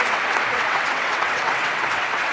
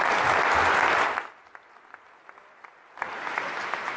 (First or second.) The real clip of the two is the second